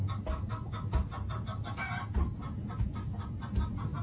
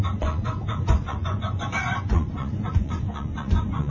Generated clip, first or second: second